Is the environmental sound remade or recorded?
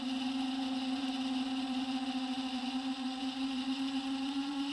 remade